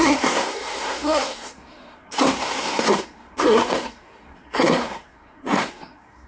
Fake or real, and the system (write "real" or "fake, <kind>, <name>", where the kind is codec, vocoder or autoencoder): fake, codec, SNAC